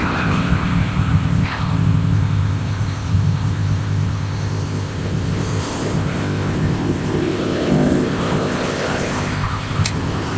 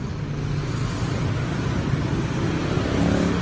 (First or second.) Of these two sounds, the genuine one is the second